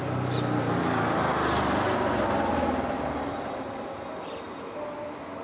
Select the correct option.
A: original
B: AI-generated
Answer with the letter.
A